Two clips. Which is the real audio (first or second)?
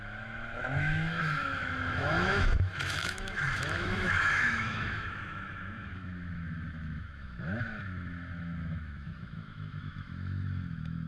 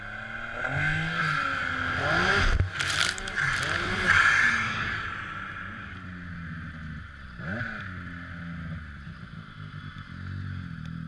second